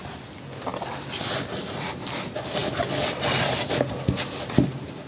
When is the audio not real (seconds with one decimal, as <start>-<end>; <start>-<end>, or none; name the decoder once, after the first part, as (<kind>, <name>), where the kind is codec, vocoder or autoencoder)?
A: none